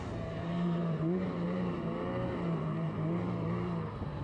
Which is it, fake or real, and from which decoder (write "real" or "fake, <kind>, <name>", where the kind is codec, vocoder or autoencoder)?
fake, vocoder, BigVGAN v2